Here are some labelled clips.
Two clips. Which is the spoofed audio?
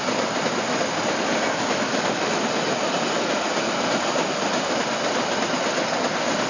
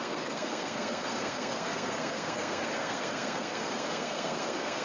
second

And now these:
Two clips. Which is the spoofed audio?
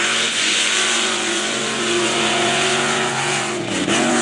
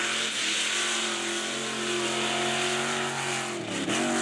first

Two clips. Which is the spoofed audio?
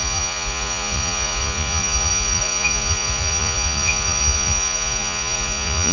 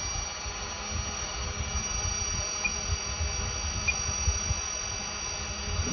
first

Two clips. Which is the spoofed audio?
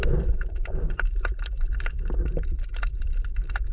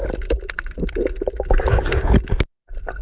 first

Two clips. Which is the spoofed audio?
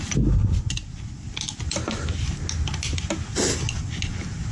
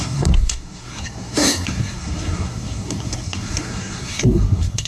second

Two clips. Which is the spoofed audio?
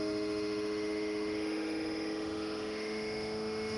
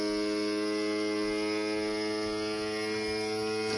first